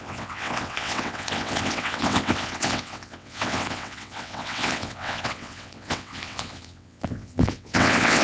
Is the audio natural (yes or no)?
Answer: no